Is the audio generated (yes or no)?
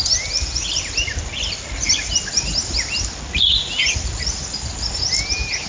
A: no